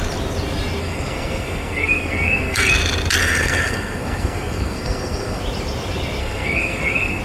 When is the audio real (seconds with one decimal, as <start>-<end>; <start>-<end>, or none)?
0.0-0.8; 2.7-3.2; 5.4-6.2